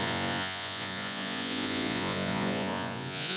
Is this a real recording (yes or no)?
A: no